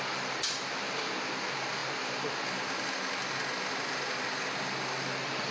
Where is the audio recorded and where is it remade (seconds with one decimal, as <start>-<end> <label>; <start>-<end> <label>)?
0.0-5.5 recorded

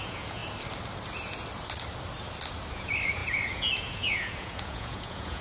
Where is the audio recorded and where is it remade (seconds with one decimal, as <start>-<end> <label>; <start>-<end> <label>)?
0.0-0.4 remade; 0.4-2.7 recorded; 2.7-5.4 remade

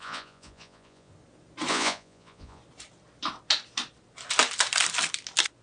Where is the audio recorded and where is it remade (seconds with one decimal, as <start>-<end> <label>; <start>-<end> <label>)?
0.0-1.1 remade; 1.1-1.7 recorded; 1.7-2.6 remade; 2.6-5.6 recorded